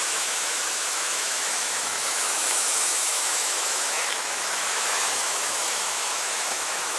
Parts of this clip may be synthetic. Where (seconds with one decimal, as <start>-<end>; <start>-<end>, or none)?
0.0-7.0